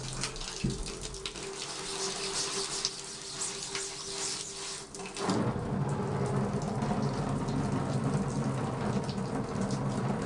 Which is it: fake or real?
real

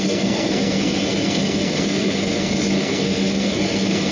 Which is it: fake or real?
fake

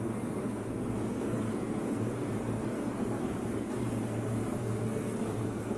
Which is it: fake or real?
fake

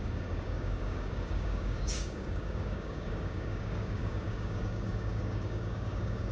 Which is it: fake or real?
fake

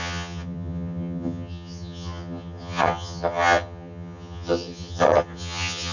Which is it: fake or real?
fake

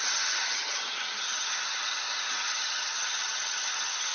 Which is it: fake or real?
fake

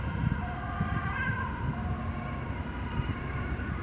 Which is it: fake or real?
real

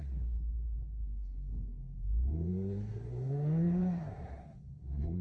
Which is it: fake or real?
fake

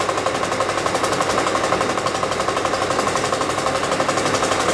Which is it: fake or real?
real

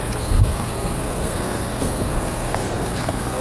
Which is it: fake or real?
fake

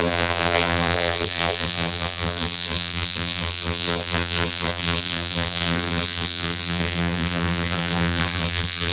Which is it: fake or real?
fake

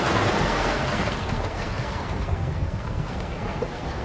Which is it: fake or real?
fake